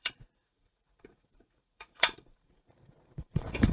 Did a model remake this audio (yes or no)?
yes